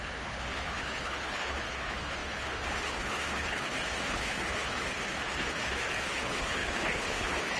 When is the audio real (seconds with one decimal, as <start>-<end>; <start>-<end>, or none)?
none